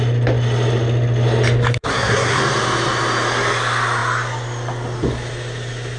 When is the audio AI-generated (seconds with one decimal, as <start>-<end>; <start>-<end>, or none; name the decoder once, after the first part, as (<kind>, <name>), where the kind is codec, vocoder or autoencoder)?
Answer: 1.8-2.4 (codec, SNAC)